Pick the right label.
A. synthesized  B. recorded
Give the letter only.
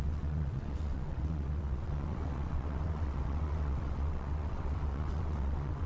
A